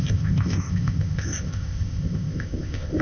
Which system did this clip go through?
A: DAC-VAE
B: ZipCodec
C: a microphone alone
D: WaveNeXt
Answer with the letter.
B